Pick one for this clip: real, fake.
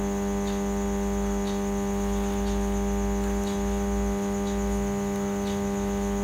real